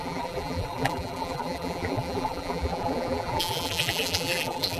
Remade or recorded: remade